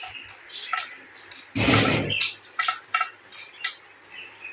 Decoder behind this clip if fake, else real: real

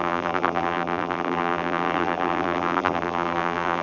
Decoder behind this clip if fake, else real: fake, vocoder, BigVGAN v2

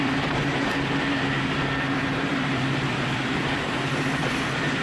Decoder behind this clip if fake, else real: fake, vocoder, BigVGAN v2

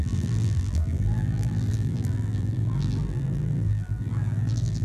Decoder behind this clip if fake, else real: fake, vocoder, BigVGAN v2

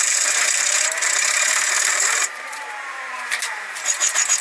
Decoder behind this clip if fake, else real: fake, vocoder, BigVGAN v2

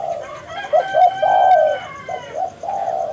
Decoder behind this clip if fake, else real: real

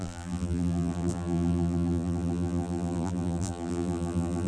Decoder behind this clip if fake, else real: fake, vocoder, BigVGAN v2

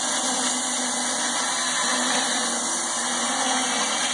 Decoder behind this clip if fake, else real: real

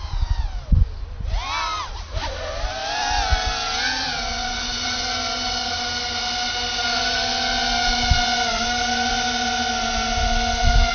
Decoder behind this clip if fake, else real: real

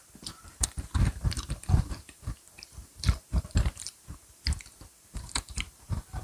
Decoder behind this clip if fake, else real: fake, vocoder, BigVGAN v2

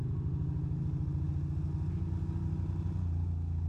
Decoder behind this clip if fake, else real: real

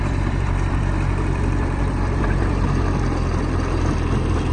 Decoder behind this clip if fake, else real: fake, vocoder, BigVGAN v2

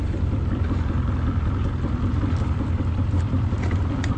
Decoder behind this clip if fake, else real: fake, vocoder, BigVGAN v2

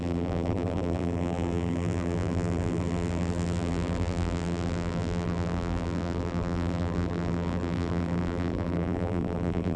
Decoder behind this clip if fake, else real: fake, vocoder, BigVGAN v2